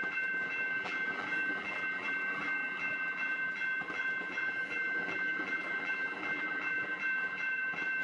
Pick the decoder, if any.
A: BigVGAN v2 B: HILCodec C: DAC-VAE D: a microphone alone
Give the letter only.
A